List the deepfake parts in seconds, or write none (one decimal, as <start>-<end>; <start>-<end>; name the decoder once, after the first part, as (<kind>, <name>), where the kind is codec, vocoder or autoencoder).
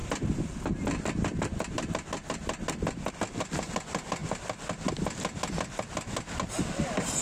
none